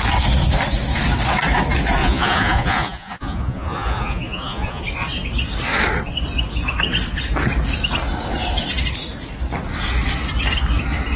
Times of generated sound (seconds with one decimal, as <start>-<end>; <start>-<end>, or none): 2.0-4.8

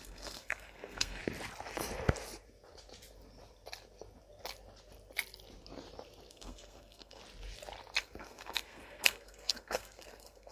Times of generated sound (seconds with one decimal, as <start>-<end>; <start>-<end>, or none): 0.0-1.2; 6.3-7.2; 8.0-10.5